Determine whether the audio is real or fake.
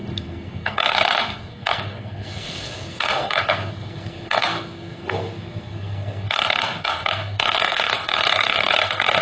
fake